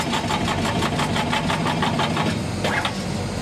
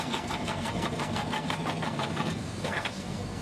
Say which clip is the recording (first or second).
first